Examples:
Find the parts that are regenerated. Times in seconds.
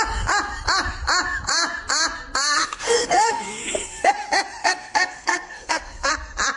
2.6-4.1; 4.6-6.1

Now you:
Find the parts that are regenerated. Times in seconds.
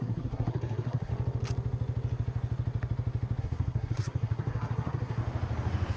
0.0-1.1; 3.4-5.2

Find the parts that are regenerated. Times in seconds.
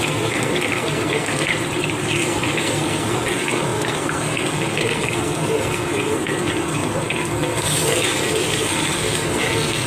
0.0-1.5; 2.0-9.9